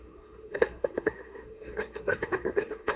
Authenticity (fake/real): fake